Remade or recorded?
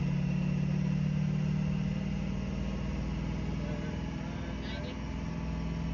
recorded